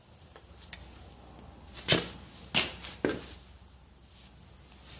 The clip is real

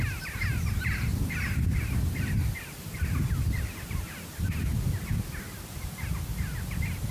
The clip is real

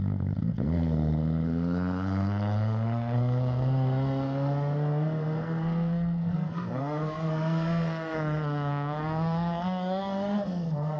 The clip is fake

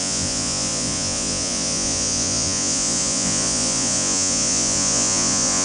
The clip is fake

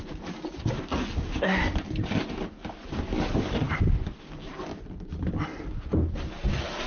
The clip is real